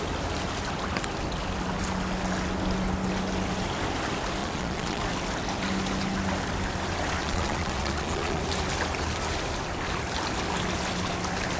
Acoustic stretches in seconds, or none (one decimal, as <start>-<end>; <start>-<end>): 0.0-4.4; 5.0-7.2; 8.4-11.6